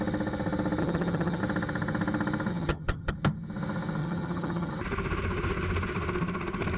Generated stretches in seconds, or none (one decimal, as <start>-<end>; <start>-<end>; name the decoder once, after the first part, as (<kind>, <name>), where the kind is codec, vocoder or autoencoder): 0.8-1.4 (vocoder, HiFi-GAN); 2.5-3.1; 4.0-4.7